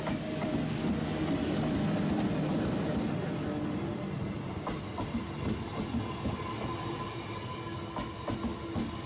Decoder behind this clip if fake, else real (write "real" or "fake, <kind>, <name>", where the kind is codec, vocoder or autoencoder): real